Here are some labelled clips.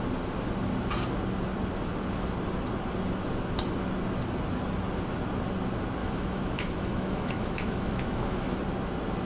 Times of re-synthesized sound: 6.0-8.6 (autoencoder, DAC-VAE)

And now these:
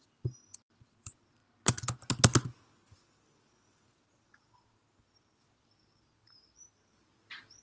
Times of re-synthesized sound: none

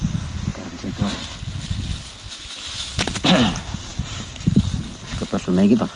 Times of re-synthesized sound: 2.2-2.9 (autoencoder, DAC-VAE)

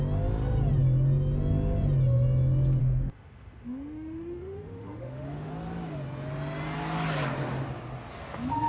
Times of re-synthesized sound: 2.8-5.5 (autoencoder, DAC-VAE)

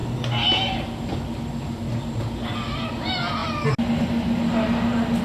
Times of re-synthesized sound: none